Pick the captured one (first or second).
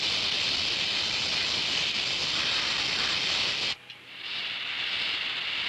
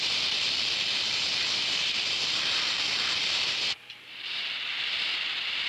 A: first